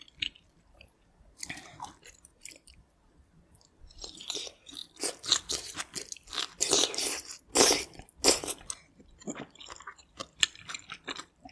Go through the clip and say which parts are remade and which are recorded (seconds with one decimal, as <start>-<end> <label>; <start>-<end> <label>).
0.0-4.8 remade; 4.8-9.1 recorded; 9.1-11.5 remade